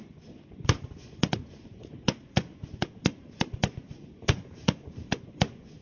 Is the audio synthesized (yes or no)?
yes